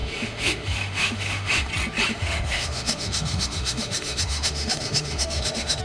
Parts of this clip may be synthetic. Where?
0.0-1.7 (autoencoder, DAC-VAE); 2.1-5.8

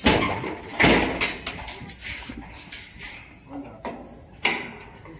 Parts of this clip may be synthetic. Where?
none

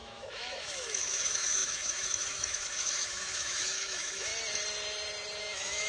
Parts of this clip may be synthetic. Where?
0.0-4.3 (autoencoder, DAC-VAE); 5.4-5.9

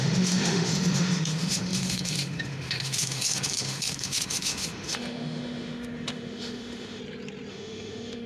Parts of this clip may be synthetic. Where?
0.0-7.0 (autoencoder, DAC-VAE); 7.5-8.3

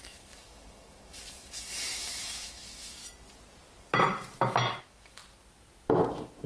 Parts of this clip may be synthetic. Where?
0.0-3.0 (autoencoder, DAC-VAE); 4.8-5.2

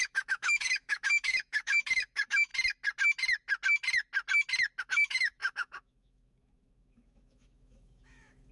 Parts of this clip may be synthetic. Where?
0.0-2.5 (autoencoder, DAC-VAE); 4.8-8.5